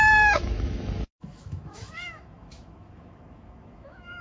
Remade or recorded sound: remade